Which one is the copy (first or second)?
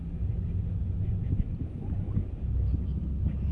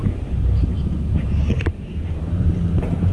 second